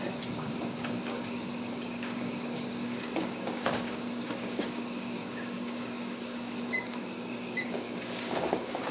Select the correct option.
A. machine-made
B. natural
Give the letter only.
A